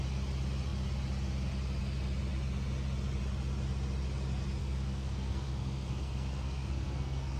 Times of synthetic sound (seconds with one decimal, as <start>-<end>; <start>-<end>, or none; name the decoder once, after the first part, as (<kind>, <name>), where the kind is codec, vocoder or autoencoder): 4.6-7.4 (codec, SNAC)